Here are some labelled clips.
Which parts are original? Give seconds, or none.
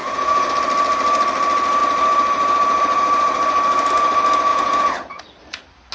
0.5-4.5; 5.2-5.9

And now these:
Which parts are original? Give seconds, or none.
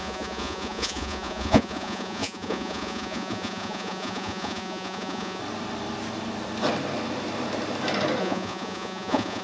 5.4-8.2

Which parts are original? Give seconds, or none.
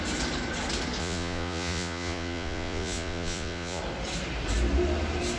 0.0-1.0; 3.8-5.4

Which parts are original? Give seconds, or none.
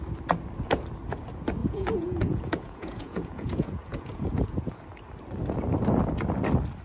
0.0-1.6; 4.7-6.8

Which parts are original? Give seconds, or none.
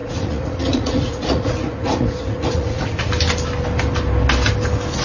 3.0-5.0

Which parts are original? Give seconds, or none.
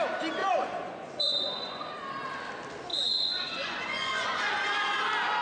0.0-0.4; 1.9-2.9; 4.5-5.4